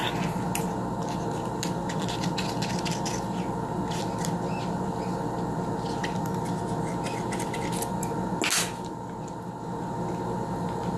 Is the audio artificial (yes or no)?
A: no